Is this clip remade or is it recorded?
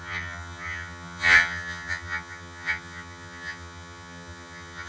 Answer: remade